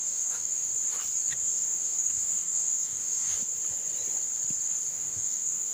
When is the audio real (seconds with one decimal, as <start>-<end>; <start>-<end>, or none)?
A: 0.7-1.4; 3.4-4.9